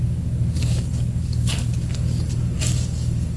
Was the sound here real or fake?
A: fake